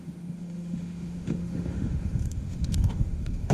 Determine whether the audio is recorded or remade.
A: remade